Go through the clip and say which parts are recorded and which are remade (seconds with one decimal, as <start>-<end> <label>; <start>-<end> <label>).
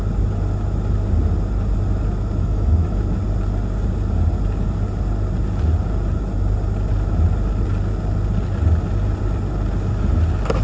0.0-2.4 recorded; 2.4-3.0 remade; 3.0-10.6 recorded